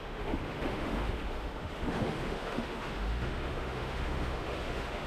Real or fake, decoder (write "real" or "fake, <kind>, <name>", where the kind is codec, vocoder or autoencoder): fake, autoencoder, DAC-VAE